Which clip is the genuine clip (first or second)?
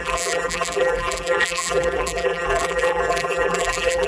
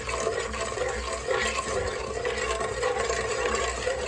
second